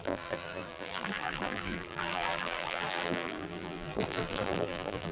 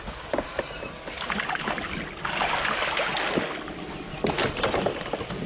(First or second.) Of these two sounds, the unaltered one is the second